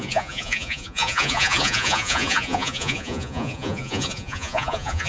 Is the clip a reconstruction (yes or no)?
yes